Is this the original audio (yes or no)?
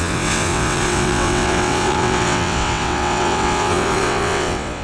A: no